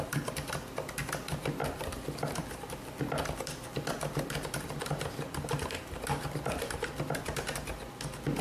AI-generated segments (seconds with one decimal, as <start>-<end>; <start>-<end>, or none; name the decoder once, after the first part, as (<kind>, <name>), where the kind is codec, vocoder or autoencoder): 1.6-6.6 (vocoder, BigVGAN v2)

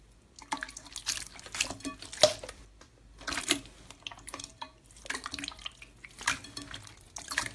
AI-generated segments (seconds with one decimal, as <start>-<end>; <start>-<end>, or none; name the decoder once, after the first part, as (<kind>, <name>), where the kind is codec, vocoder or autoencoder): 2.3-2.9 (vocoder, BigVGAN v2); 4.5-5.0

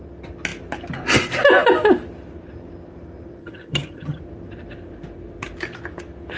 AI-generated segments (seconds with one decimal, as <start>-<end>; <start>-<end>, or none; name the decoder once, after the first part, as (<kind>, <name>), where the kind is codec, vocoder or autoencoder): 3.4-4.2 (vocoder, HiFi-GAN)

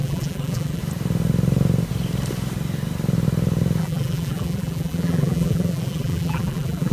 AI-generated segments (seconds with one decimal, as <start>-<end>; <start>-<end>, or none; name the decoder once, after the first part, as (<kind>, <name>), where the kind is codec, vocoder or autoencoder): 0.0-0.8 (vocoder, BigVGAN v2); 3.8-6.9